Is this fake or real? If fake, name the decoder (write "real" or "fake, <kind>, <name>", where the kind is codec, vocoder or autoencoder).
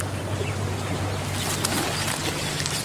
real